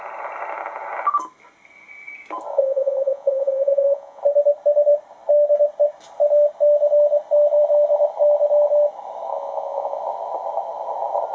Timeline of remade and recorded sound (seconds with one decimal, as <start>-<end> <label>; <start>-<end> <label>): 0.0-2.5 recorded; 2.5-4.2 remade; 4.2-9.3 recorded; 9.3-10.0 remade; 10.0-11.3 recorded